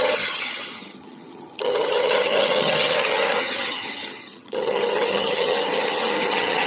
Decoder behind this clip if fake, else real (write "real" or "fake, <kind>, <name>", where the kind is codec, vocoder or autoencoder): fake, vocoder, HiFi-GAN